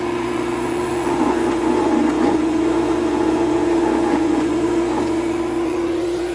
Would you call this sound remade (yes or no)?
yes